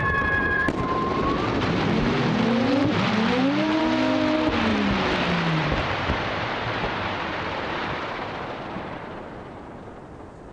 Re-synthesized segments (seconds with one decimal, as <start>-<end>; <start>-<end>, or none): 0.0-3.8; 4.7-9.8